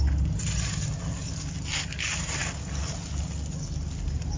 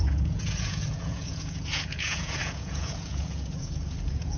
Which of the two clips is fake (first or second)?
second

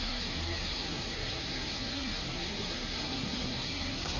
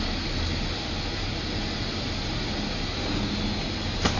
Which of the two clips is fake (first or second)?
first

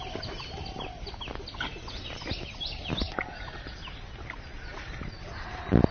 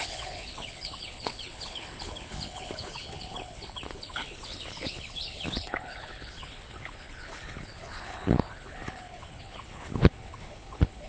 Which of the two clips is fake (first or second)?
second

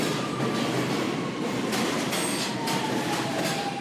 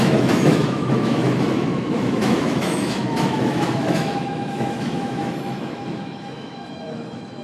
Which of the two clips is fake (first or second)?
second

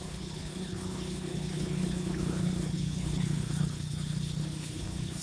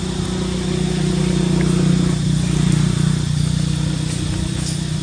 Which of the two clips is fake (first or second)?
first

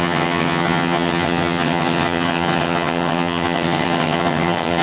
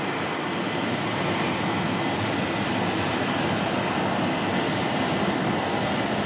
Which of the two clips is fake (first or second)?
first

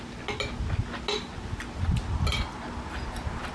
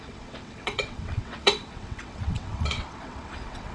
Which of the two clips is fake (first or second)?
second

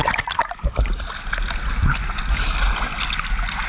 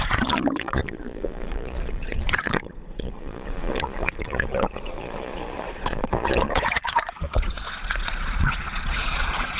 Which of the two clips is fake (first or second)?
second